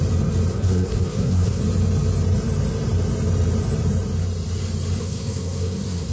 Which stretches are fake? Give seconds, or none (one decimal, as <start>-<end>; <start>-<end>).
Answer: 0.5-1.6; 5.0-6.1